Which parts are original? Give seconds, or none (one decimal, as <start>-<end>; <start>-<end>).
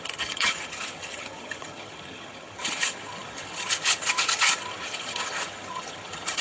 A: none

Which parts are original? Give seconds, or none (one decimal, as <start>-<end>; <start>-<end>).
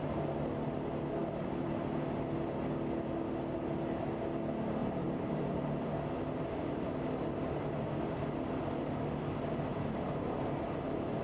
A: 0.0-1.2; 1.8-4.8; 5.8-9.7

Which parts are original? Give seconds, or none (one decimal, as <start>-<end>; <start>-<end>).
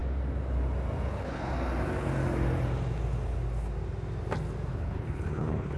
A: 0.0-1.1; 1.5-4.7